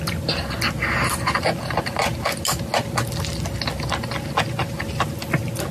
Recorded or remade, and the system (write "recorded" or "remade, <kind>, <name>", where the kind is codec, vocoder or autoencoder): recorded